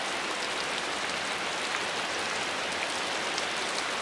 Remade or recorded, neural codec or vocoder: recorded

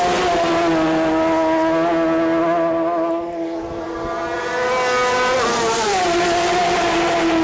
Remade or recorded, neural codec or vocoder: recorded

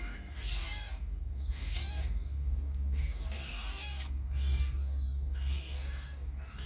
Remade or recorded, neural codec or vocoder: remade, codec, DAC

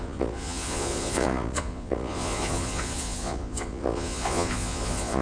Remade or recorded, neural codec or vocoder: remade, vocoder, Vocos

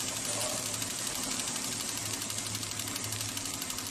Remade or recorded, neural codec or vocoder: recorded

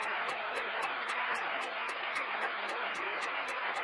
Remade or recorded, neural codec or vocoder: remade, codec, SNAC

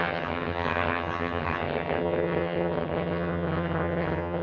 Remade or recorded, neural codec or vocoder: remade, vocoder, HiFi-GAN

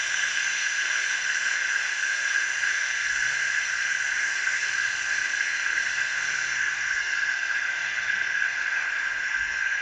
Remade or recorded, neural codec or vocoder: remade, codec, SNAC